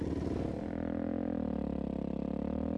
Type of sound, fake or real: real